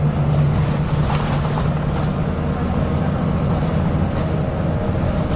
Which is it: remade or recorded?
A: recorded